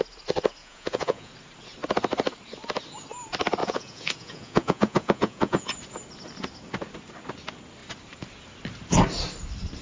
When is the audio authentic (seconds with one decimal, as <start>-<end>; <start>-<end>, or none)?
0.0-0.6; 1.3-3.6; 5.7-9.8